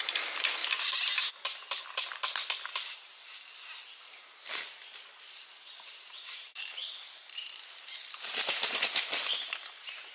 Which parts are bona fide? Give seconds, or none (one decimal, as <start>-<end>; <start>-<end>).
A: 0.6-4.2